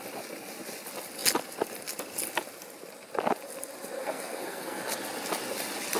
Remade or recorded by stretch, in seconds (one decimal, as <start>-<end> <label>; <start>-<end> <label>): 0.0-4.0 recorded; 4.0-4.8 remade; 4.8-6.0 recorded